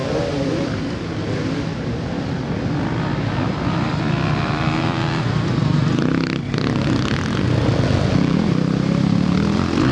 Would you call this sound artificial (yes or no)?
no